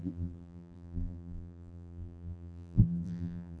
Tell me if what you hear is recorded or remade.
remade